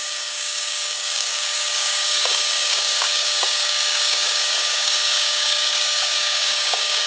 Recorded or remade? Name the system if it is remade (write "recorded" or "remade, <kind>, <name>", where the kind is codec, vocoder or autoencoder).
remade, codec, DAC